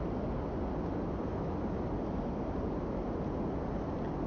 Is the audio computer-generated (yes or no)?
no